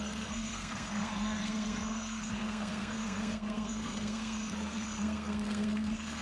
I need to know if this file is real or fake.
fake